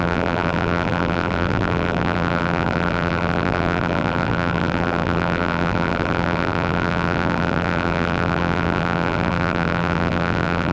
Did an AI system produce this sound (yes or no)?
yes